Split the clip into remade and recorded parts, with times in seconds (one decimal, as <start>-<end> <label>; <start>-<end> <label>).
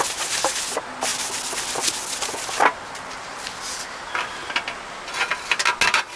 0.0-6.2 recorded